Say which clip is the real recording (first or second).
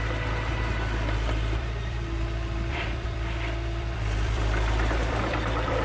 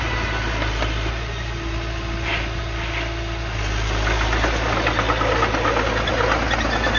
second